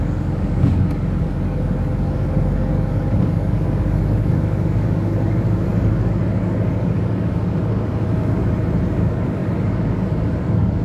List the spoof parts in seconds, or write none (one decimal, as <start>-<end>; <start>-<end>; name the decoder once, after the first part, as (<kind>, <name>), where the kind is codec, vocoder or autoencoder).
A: 0.0-8.4 (codec, DAC); 8.9-10.8